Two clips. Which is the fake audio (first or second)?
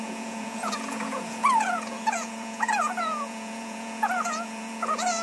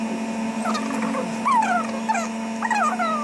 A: first